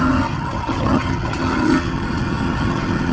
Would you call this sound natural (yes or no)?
no